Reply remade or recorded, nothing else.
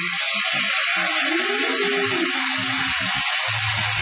recorded